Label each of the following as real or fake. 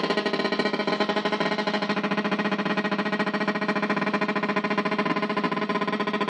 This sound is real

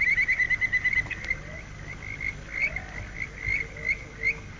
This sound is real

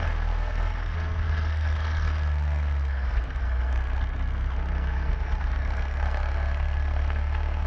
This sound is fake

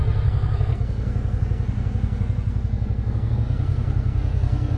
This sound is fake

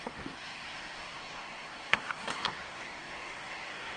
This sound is fake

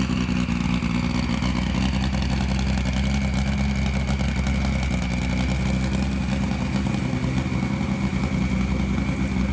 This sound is real